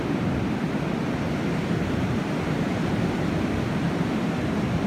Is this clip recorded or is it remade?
recorded